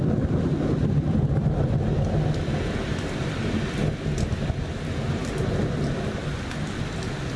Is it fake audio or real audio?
real